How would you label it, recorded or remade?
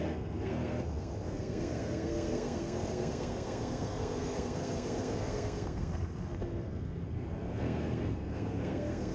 remade